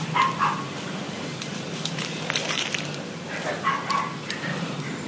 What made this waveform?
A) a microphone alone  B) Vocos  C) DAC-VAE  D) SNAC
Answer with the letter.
A